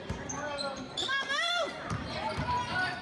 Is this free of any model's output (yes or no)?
no